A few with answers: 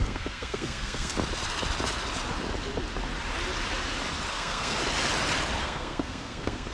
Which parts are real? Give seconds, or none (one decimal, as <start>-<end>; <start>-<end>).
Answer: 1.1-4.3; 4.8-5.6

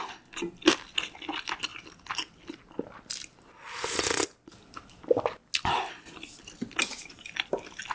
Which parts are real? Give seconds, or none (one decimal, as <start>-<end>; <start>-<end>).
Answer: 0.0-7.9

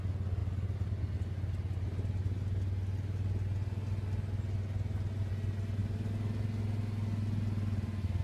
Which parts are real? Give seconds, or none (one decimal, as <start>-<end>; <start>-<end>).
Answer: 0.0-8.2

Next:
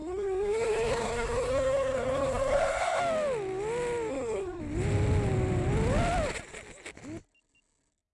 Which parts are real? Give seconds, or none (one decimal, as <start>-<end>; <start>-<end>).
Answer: 3.0-4.1; 4.6-8.1